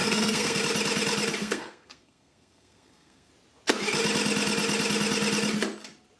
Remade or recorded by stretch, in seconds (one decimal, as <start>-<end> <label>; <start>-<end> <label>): 0.0-0.6 remade; 0.6-1.4 recorded; 1.4-3.3 remade; 3.3-6.2 recorded